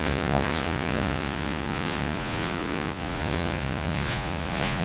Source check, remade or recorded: remade